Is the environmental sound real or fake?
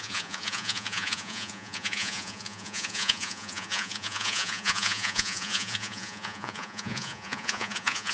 fake